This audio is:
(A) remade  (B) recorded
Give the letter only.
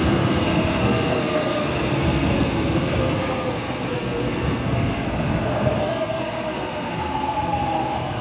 A